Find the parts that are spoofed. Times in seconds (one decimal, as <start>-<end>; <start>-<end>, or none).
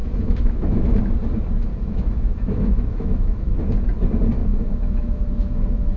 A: 0.0-1.0; 1.7-3.5; 4.4-6.0